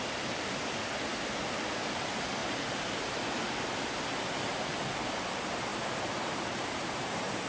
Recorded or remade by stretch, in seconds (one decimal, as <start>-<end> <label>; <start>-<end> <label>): 0.0-2.4 recorded; 2.4-3.6 remade; 3.6-5.7 recorded; 5.7-7.0 remade; 7.0-7.5 recorded